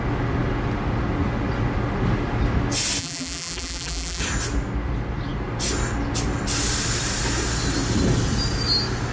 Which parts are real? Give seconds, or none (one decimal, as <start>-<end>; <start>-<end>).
0.0-3.0; 4.2-9.1